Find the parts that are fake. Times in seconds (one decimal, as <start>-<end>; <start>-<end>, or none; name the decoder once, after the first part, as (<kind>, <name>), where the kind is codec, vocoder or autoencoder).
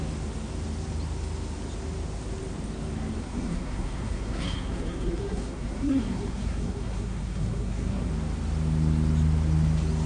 3.2-8.1 (codec, SNAC)